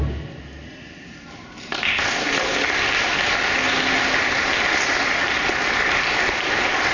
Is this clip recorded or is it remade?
recorded